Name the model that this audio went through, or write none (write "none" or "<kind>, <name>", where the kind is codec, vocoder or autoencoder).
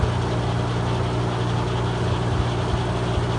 none